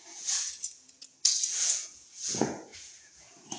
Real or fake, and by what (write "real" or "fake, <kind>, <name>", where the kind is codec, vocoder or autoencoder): fake, vocoder, Vocos